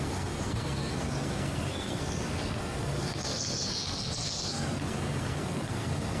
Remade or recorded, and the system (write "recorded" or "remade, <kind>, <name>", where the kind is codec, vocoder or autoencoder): remade, codec, SNAC